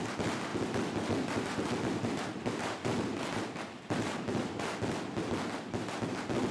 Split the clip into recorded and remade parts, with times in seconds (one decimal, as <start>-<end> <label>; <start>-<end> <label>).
0.0-0.5 recorded; 0.5-4.4 remade; 4.4-6.5 recorded